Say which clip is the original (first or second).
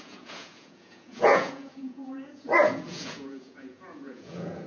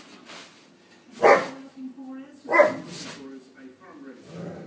second